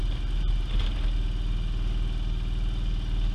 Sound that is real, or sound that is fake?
real